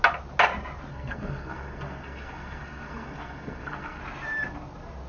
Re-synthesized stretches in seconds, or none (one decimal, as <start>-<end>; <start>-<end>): 0.9-4.0